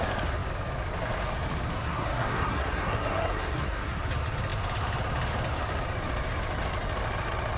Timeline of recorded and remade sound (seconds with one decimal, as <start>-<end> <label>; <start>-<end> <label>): 0.0-1.7 recorded; 1.7-4.0 remade; 4.0-7.6 recorded